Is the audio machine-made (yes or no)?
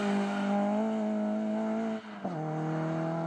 no